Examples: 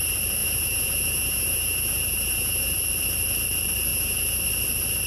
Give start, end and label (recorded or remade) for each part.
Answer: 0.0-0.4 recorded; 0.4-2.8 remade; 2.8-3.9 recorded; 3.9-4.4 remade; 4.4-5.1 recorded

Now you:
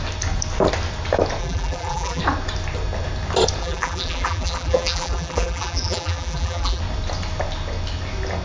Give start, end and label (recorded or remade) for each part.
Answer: 0.0-1.4 recorded; 1.4-2.2 remade; 2.2-3.6 recorded; 3.6-6.8 remade; 6.8-8.4 recorded

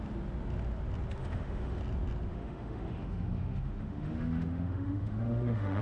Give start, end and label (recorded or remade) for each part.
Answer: 0.0-1.2 recorded; 1.2-1.8 remade; 1.8-2.3 recorded; 2.3-5.8 remade

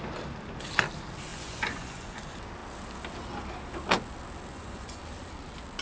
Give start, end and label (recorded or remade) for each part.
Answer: 0.0-1.3 recorded; 1.3-2.2 remade; 2.2-4.5 recorded; 4.5-5.0 remade; 5.0-5.8 recorded

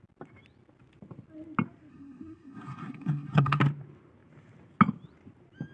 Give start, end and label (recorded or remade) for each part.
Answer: 0.0-1.9 recorded; 1.9-3.6 remade; 3.6-5.7 recorded